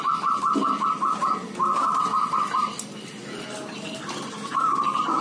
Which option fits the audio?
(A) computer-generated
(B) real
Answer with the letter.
B